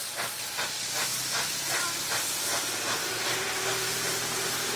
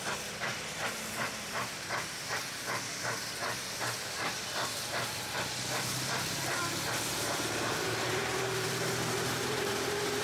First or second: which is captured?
first